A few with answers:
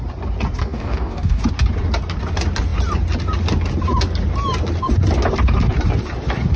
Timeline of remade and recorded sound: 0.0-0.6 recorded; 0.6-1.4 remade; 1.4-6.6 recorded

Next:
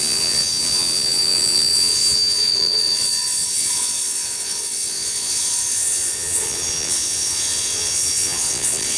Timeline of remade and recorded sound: 0.0-9.0 remade

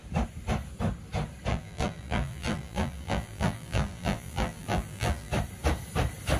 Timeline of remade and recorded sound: 0.0-1.5 recorded; 1.5-5.3 remade; 5.3-6.4 recorded

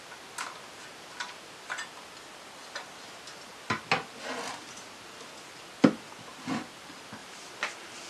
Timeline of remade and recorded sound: 0.0-8.1 recorded

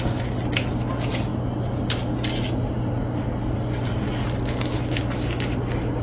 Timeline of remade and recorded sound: 0.0-6.0 recorded

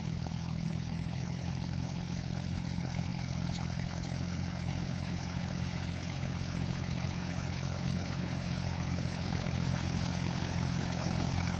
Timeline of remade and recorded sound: 0.0-11.6 remade

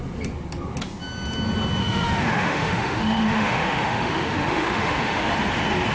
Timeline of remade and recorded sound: 0.0-1.8 recorded; 1.8-5.3 remade; 5.3-5.9 recorded